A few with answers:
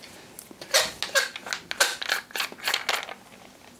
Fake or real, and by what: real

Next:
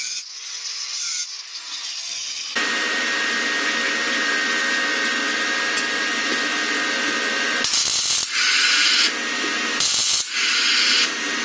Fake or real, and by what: real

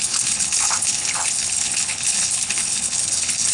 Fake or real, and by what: fake, codec, HILCodec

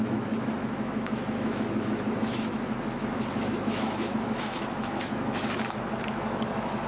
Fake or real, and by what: fake, autoencoder, DAC-VAE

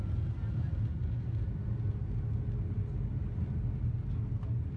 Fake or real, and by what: real